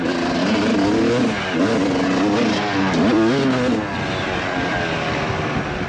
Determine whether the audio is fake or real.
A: real